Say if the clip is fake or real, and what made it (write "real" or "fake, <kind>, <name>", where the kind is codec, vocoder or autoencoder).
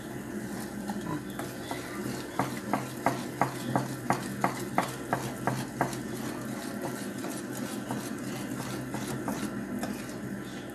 real